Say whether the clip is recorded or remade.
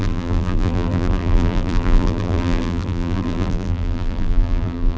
remade